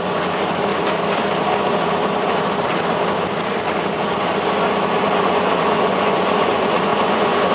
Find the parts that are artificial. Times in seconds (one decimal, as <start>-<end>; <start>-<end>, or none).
0.0-0.7; 5.2-7.5